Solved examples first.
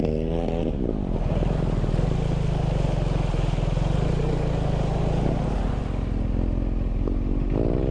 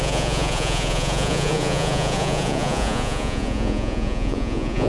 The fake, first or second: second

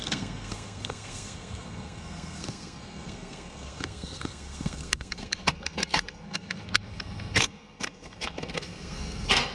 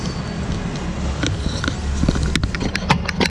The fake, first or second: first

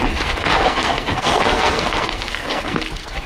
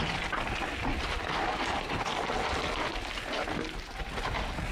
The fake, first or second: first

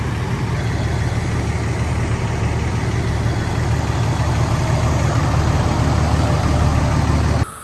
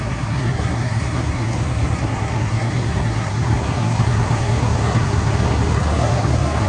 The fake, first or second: second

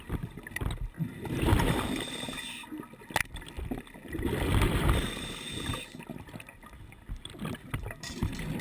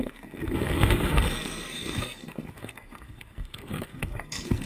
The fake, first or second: second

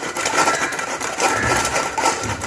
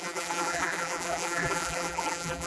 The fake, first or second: second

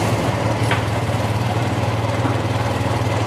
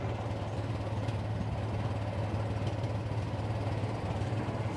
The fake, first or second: first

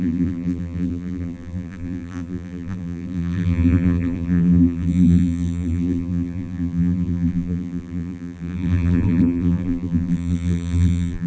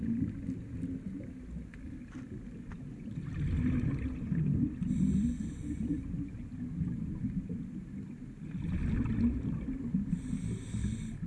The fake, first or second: first